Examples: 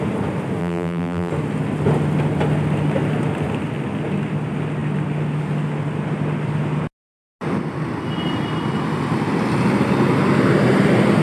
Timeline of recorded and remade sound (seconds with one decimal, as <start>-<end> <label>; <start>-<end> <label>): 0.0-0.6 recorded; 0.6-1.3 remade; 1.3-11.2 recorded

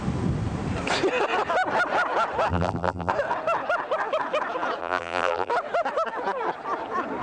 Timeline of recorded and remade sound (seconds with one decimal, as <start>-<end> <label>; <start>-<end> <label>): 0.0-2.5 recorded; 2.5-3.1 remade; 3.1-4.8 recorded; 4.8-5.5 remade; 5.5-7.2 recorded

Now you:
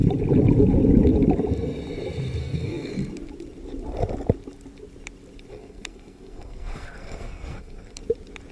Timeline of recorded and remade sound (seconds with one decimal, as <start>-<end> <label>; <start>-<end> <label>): 0.0-2.4 recorded; 2.4-2.9 remade; 2.9-5.5 recorded; 5.5-8.0 remade; 8.0-8.5 recorded